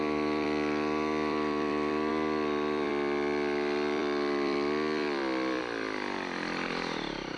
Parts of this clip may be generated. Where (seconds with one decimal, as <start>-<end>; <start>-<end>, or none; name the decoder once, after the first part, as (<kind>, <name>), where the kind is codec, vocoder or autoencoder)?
0.0-7.4 (vocoder, BigVGAN v2)